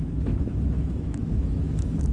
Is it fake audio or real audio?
fake